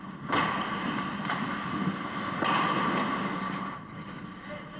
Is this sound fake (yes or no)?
no